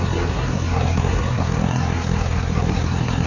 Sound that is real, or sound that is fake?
fake